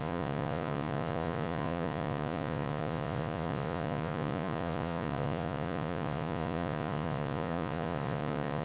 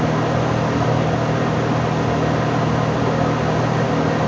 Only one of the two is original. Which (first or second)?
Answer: second